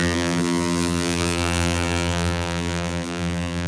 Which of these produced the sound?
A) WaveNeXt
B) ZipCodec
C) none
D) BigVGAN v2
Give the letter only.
D